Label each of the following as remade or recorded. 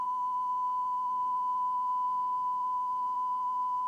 remade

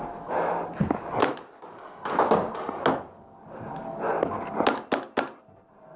recorded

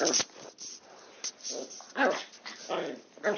recorded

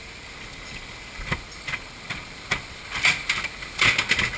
recorded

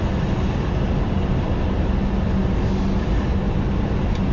recorded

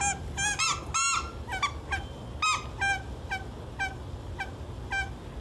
recorded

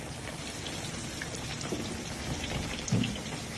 recorded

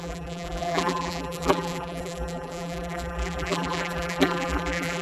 remade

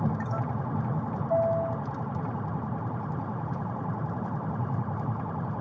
recorded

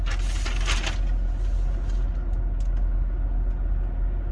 recorded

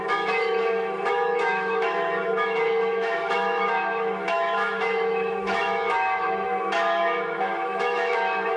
remade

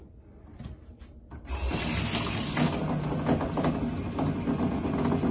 recorded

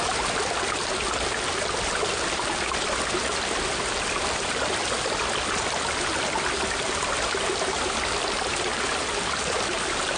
recorded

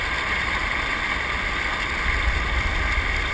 recorded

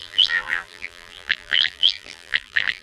remade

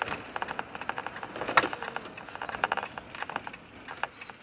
recorded